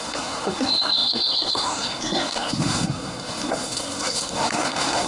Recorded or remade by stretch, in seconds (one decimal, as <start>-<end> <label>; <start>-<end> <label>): 0.0-5.1 remade